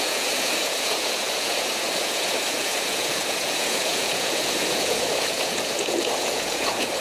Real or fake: fake